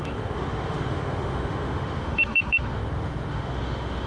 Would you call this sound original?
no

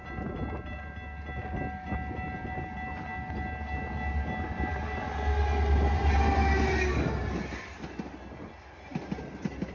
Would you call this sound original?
yes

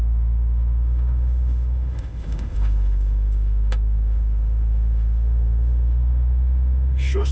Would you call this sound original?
no